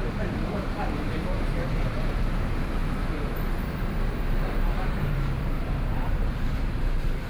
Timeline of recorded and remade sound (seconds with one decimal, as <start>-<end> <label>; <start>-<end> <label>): 0.0-2.8 remade; 2.8-4.3 recorded; 4.3-7.3 remade